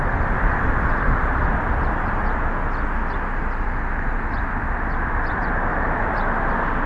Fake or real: real